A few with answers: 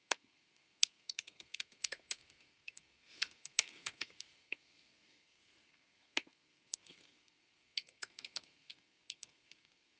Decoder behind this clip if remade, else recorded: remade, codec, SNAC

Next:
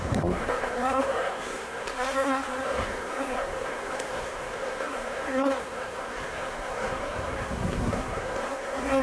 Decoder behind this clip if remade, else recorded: remade, codec, SNAC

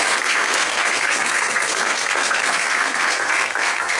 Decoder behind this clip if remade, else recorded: remade, codec, SNAC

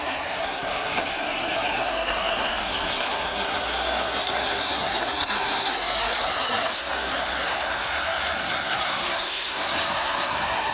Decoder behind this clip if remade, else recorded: remade, codec, SNAC